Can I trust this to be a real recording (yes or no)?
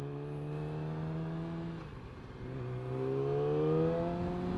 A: yes